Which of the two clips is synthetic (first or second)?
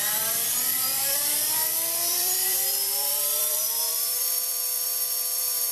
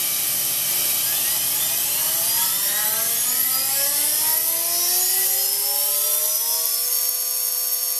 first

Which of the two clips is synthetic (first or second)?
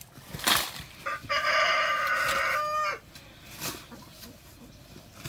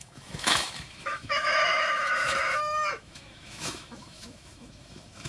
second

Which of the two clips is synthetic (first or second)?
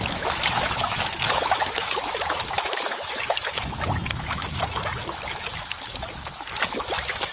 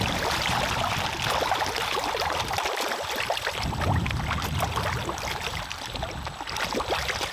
first